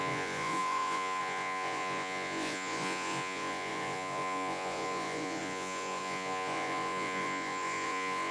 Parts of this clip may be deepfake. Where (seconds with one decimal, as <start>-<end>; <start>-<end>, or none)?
0.0-8.3